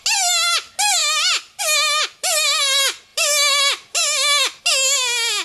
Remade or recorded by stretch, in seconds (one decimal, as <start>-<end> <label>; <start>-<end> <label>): 0.0-5.4 recorded